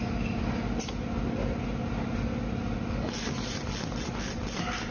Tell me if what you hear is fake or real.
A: real